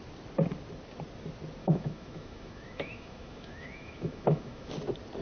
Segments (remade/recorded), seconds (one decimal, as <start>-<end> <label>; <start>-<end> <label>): 0.0-1.6 recorded; 1.6-4.7 remade; 4.7-5.2 recorded